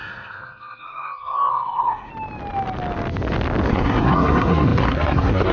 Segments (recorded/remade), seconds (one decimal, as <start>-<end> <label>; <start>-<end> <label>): 0.0-2.1 remade; 2.1-3.7 recorded; 3.7-5.5 remade